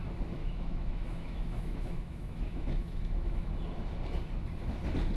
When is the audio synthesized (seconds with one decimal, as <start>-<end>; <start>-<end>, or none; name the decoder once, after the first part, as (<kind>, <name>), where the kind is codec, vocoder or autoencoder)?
0.4-3.5 (autoencoder, DAC-VAE)